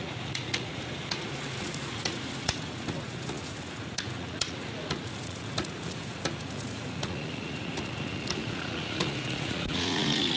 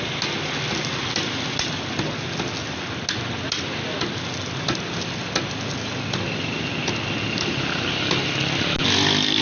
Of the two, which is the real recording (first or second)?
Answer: second